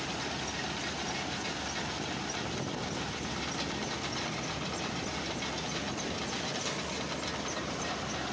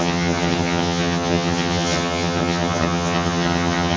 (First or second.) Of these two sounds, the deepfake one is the second